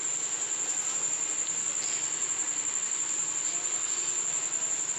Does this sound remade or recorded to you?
recorded